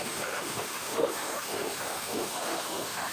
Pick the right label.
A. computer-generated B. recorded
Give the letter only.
A